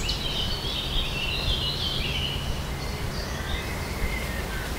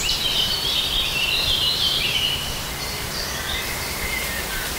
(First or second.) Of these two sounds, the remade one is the second